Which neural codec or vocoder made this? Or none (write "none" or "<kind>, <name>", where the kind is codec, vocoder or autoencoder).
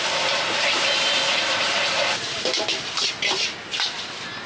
none